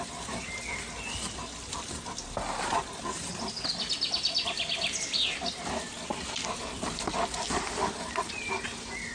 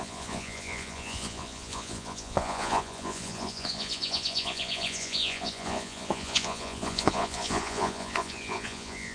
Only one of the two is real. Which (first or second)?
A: first